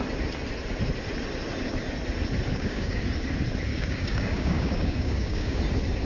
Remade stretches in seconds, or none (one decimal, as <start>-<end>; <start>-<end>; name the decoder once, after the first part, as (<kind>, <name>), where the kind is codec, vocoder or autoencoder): 2.5-3.0 (codec, DAC); 3.7-5.6